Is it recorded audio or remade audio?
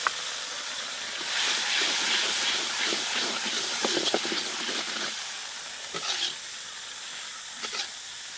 recorded